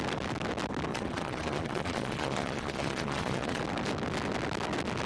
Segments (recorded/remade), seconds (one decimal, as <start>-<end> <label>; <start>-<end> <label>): 0.0-0.9 recorded; 0.9-3.6 remade; 3.6-5.1 recorded